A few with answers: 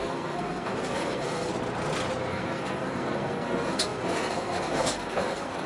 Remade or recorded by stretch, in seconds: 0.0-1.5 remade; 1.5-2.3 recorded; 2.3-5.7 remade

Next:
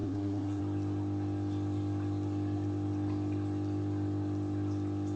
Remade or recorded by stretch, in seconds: 0.0-0.6 remade; 0.6-5.2 recorded

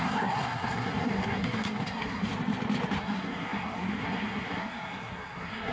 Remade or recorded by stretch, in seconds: 0.0-2.3 remade; 2.3-3.0 recorded; 3.0-5.7 remade